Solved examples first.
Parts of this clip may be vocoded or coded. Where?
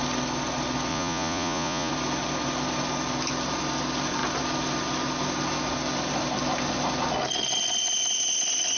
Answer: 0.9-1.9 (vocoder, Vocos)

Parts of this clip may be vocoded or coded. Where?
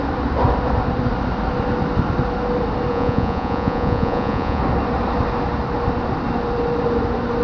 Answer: 2.9-4.6 (vocoder, Vocos)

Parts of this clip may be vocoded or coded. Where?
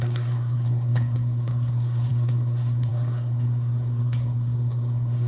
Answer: 0.0-5.3 (codec, SNAC)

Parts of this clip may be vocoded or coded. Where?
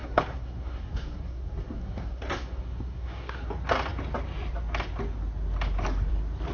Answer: 0.0-3.5 (codec, SNAC)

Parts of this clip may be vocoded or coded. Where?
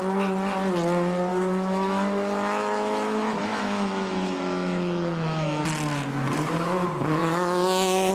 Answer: 1.3-5.6 (autoencoder, DAC-VAE); 7.2-8.1